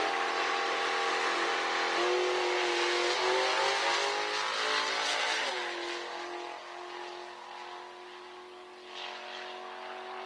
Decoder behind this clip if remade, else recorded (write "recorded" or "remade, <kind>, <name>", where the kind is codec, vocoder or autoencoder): recorded